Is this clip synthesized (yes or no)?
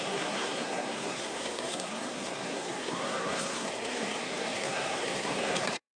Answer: yes